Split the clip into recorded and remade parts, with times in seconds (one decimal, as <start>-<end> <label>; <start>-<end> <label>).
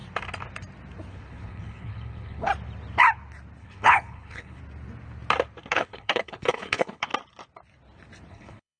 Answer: 0.0-1.1 recorded; 1.1-2.5 remade; 2.5-3.6 recorded; 3.6-4.6 remade; 4.6-5.7 recorded; 5.7-7.1 remade; 7.1-8.3 recorded; 8.3-8.8 remade